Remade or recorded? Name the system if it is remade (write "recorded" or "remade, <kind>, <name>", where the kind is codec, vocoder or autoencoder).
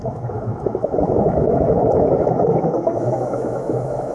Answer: remade, autoencoder, DAC-VAE